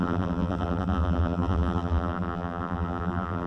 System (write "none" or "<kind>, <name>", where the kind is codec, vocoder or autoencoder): vocoder, BigVGAN v2